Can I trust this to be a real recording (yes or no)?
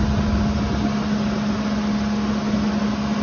yes